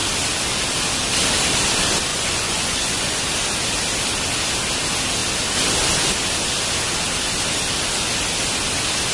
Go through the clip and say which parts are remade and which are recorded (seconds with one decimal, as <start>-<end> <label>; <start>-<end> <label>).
0.0-2.1 recorded; 2.1-3.2 remade; 3.2-9.1 recorded